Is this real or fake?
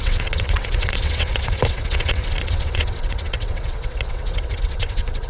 fake